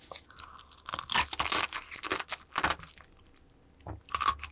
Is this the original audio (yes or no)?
yes